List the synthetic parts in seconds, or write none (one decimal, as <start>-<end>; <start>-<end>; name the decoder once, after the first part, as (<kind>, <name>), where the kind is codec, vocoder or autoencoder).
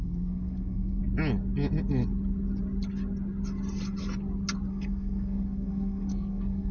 0.0-1.0 (codec, SNAC); 4.7-6.7